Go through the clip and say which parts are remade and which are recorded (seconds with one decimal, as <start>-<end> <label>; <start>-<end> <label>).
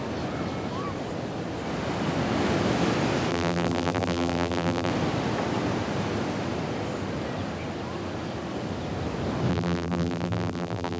0.0-3.3 recorded; 3.3-4.9 remade; 4.9-9.5 recorded; 9.5-11.0 remade